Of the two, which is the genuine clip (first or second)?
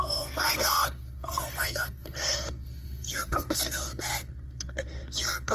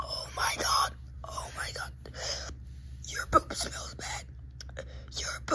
second